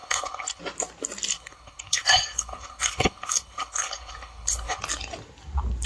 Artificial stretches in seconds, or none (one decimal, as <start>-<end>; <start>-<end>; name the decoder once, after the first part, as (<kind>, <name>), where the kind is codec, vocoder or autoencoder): 0.0-0.6 (codec, HILCodec); 1.3-4.8